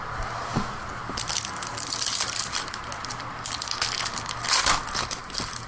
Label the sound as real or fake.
real